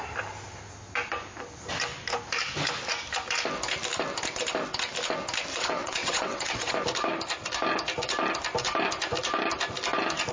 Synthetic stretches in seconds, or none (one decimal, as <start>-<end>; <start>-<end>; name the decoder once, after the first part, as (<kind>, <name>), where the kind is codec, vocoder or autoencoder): 5.5-6.7 (vocoder, WaveNeXt)